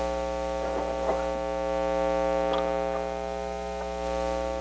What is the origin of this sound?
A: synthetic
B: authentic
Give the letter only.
B